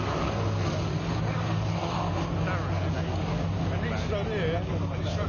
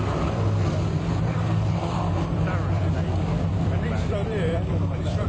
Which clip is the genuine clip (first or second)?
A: first